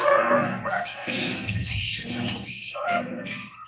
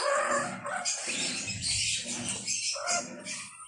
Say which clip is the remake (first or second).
first